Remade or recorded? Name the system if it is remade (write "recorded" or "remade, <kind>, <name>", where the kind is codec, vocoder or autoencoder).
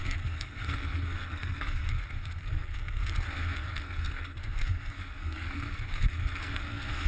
remade, codec, SNAC